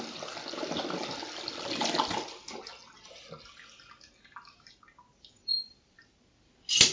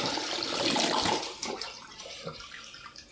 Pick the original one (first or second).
first